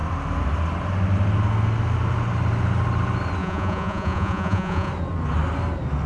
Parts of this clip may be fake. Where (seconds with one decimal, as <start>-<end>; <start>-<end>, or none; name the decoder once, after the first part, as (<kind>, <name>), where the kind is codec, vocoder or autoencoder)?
3.4-4.9 (vocoder, Vocos)